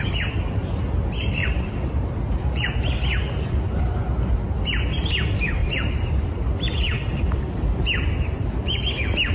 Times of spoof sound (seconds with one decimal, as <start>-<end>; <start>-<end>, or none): 1.4-3.6; 5.6-6.4